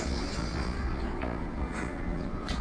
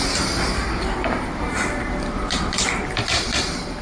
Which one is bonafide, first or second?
second